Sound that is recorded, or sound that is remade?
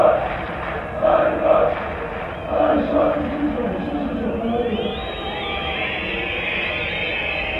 recorded